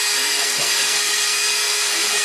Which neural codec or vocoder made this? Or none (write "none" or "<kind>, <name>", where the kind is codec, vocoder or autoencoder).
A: codec, SNAC